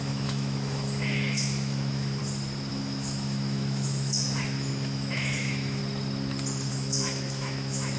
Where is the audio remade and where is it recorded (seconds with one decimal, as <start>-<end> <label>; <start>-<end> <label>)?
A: 0.0-2.2 remade; 2.2-2.7 recorded; 2.7-5.8 remade; 5.8-6.7 recorded; 6.7-8.0 remade